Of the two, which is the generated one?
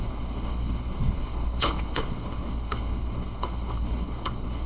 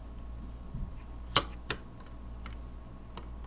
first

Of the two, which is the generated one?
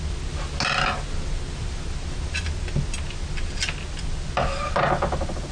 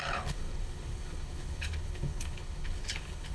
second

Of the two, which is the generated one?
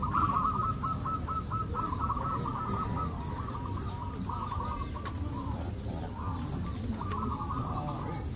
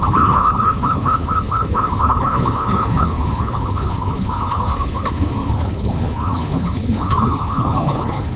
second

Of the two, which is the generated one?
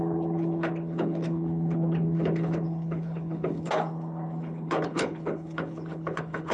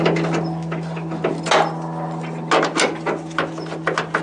first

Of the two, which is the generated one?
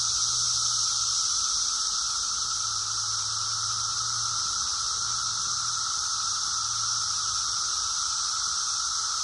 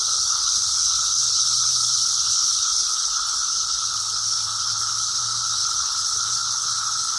second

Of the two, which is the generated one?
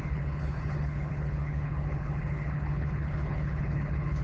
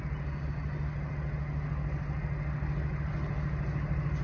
first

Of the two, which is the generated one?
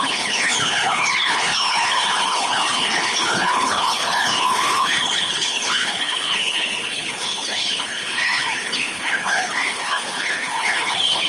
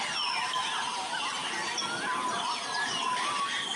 first